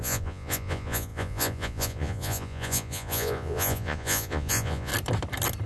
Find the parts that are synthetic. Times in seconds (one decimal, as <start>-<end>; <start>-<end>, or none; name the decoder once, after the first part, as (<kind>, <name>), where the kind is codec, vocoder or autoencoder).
0.0-4.9 (vocoder, Vocos)